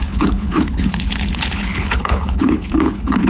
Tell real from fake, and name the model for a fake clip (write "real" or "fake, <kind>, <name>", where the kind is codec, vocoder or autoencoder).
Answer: fake, codec, HILCodec